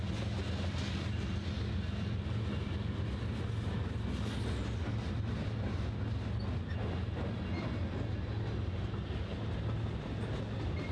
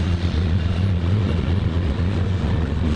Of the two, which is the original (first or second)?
first